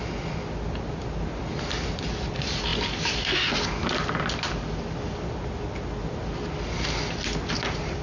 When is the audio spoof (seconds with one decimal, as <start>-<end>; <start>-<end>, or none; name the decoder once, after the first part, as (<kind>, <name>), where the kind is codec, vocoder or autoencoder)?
none